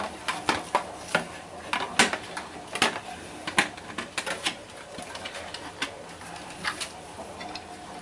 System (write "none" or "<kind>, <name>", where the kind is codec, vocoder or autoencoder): none